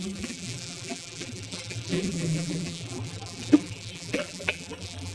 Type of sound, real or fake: fake